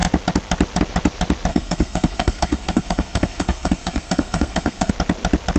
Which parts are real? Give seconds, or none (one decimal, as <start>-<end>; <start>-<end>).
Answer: 0.0-1.5; 4.9-5.6